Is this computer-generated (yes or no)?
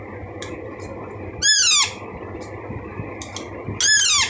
no